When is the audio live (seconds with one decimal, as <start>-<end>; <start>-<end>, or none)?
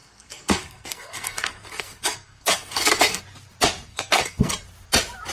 3.2-3.9; 4.5-5.3